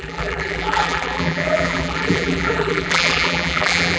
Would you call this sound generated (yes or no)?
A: yes